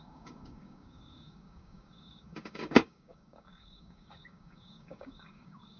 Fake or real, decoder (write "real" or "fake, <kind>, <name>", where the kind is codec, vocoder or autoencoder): fake, codec, DAC